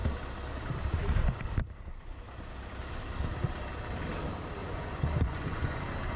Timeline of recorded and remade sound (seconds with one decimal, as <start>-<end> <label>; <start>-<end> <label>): 0.0-4.6 recorded; 4.6-5.8 remade; 5.8-6.2 recorded